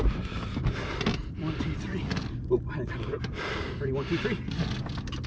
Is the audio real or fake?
real